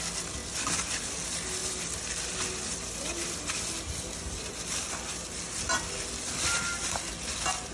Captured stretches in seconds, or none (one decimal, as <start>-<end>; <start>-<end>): 0.0-0.4; 1.2-1.6; 4.9-7.7